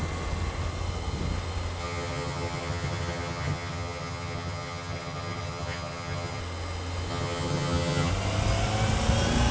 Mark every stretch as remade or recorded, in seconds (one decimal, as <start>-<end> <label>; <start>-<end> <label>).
0.0-1.8 recorded; 1.8-6.4 remade; 6.4-7.1 recorded; 7.1-8.1 remade; 8.1-9.5 recorded